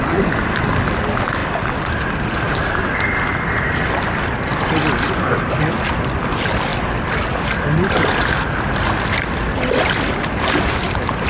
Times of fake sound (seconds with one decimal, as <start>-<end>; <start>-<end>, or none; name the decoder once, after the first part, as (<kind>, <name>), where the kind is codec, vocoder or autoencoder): none